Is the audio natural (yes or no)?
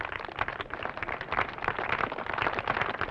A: yes